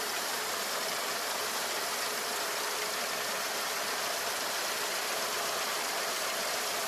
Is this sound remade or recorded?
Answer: remade